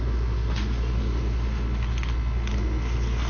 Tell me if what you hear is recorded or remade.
recorded